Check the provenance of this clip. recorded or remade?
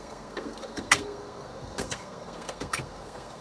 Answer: remade